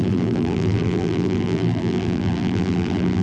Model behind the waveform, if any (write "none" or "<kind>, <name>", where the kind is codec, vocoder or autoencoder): vocoder, BigVGAN v2